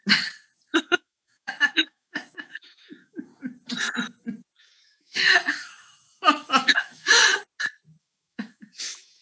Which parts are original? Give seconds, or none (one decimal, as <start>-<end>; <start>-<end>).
0.0-0.8; 3.3-4.6; 7.2-8.0